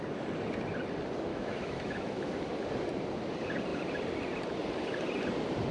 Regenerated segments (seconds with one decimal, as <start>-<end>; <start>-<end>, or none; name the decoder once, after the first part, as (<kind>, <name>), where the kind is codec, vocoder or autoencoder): 1.3-2.3 (autoencoder, DAC-VAE)